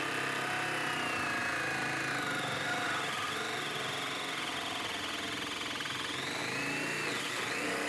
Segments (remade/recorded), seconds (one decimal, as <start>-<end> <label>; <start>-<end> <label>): 0.0-7.9 recorded